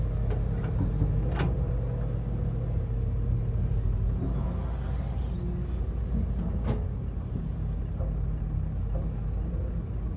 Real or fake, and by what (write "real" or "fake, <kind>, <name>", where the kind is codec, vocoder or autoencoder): real